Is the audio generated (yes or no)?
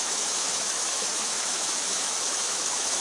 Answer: yes